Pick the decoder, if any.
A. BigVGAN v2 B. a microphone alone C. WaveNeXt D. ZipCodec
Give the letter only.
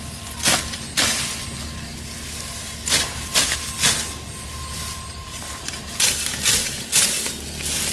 B